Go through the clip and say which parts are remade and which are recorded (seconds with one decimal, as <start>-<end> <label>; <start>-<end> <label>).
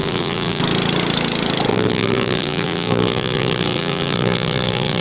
0.0-0.6 remade; 0.6-1.7 recorded; 1.7-5.0 remade